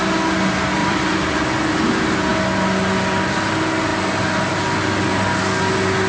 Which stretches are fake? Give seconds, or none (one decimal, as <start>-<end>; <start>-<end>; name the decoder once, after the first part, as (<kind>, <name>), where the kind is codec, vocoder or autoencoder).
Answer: 0.8-1.4 (vocoder, BigVGAN v2)